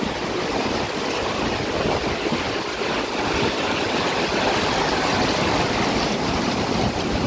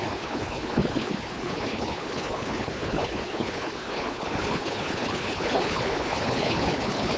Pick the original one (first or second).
first